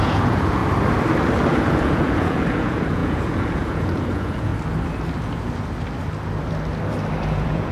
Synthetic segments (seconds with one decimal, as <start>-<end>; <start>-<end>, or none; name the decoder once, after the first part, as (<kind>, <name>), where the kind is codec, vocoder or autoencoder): 0.0-0.6 (vocoder, Vocos); 1.5-4.5; 7.2-7.7